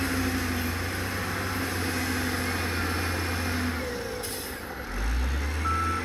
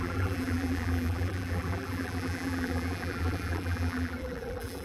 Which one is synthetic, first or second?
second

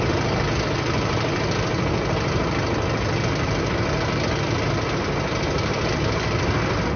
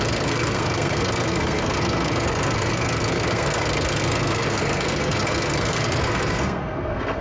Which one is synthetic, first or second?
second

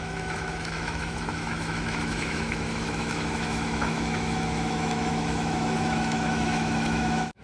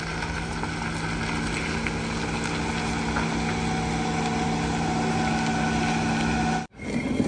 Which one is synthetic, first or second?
first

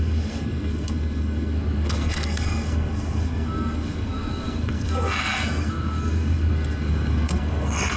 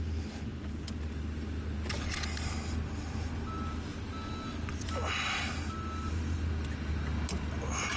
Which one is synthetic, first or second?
first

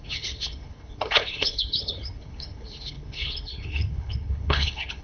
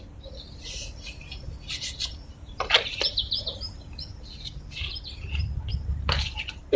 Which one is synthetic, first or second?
first